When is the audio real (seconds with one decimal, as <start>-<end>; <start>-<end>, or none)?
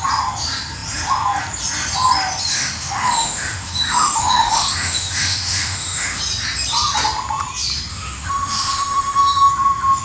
0.0-2.5; 6.2-7.9; 9.5-10.0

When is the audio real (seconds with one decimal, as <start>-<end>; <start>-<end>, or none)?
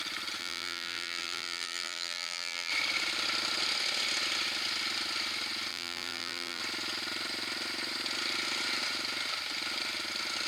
0.0-0.4; 2.7-5.7; 6.6-10.5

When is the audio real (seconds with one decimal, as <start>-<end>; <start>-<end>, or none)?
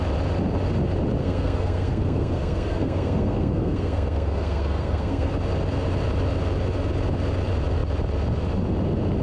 0.0-1.2; 5.3-9.2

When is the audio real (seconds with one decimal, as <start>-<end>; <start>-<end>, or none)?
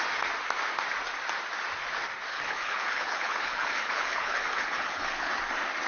0.0-2.3; 5.3-5.9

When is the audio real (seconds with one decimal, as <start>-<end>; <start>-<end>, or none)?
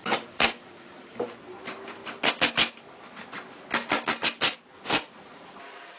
2.0-4.9